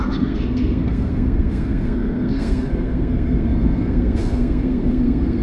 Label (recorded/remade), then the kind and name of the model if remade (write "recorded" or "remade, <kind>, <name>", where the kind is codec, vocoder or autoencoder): remade, codec, SNAC